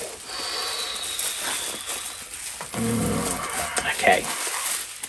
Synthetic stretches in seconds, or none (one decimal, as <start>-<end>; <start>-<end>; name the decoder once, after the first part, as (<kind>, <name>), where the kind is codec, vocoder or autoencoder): none